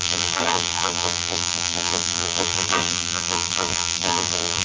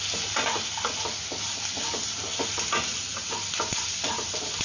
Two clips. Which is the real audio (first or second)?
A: second